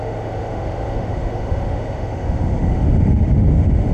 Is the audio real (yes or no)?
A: no